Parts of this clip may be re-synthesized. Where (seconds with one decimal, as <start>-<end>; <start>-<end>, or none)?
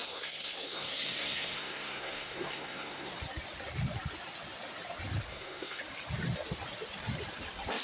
0.0-3.1; 5.3-5.8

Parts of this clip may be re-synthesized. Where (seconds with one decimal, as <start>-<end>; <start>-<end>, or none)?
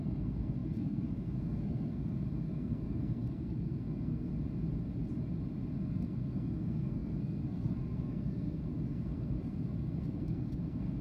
0.0-4.3; 5.8-11.0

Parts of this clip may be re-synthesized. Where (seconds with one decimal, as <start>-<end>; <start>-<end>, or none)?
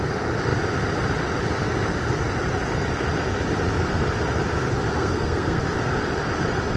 4.9-5.6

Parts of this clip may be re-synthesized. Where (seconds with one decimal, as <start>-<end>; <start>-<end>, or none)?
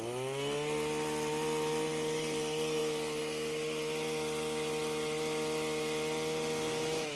none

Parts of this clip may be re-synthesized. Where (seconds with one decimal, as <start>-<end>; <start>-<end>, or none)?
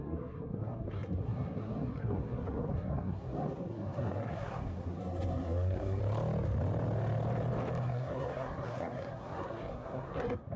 0.0-6.0; 7.8-10.6